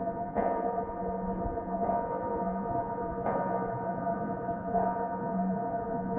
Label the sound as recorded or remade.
remade